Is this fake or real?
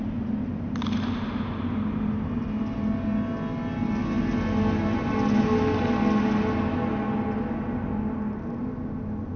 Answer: real